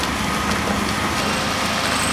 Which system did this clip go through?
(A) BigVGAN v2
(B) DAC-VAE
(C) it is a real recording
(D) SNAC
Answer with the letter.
C